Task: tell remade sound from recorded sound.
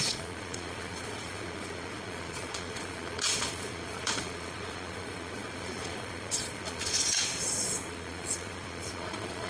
remade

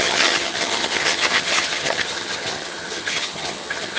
remade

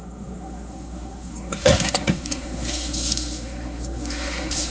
remade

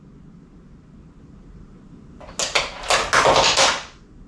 recorded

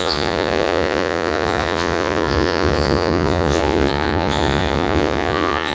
remade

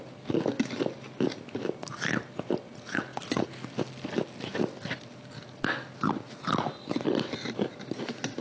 recorded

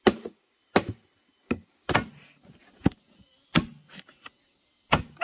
recorded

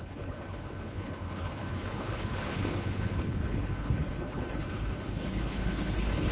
remade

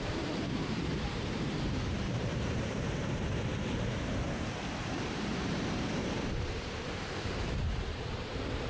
remade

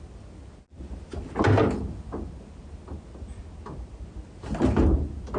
recorded